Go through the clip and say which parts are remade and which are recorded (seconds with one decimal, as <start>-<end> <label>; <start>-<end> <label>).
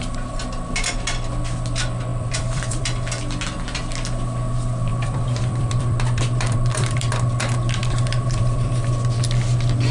0.0-2.1 recorded; 2.1-2.8 remade; 2.8-4.9 recorded; 4.9-7.1 remade; 7.1-7.8 recorded; 7.8-8.7 remade; 8.7-9.9 recorded